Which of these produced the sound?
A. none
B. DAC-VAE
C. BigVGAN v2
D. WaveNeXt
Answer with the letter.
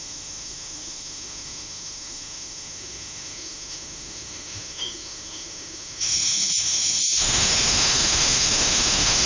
B